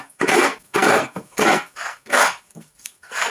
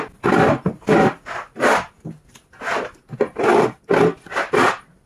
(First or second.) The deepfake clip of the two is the first